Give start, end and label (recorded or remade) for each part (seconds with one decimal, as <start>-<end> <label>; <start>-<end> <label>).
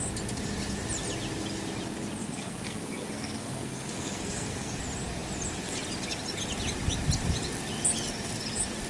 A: 0.0-2.2 recorded; 2.2-4.7 remade; 4.7-8.9 recorded